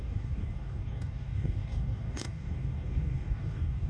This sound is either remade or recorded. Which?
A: remade